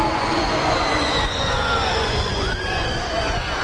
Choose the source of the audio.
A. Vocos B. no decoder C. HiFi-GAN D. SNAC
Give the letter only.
A